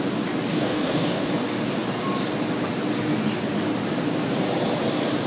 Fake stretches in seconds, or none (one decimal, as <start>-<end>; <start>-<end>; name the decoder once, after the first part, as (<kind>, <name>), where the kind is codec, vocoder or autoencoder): 0.5-1.3 (codec, DAC)